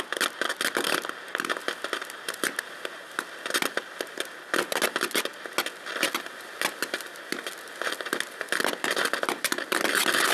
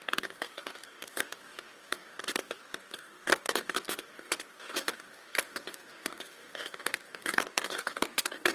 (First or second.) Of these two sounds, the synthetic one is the second